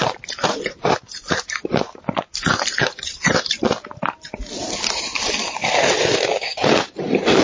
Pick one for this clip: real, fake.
fake